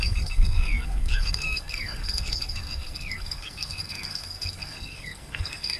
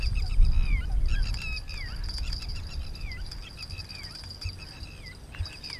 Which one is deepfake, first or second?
first